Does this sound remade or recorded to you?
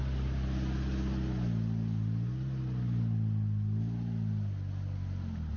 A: recorded